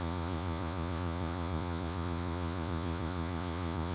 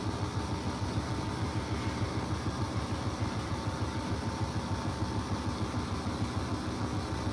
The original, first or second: second